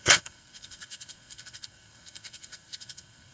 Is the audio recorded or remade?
remade